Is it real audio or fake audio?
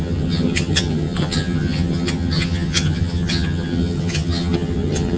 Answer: fake